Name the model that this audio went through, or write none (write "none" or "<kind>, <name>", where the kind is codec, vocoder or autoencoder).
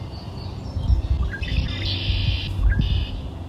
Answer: none